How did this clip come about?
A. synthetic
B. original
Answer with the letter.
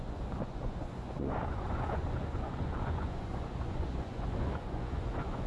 A